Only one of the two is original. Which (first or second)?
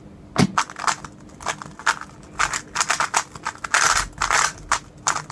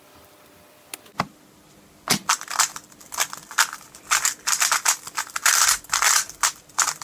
first